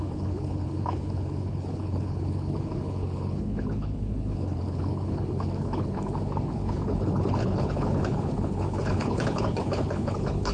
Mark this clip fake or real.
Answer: fake